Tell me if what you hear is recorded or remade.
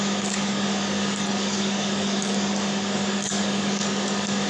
remade